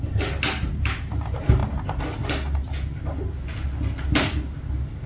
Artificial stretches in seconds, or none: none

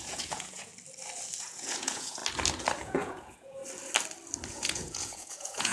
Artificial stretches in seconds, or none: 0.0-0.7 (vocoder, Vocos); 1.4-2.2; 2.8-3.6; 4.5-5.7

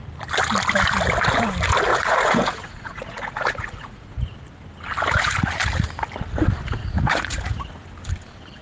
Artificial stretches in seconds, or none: 1.9-4.2 (vocoder, Vocos); 6.8-7.6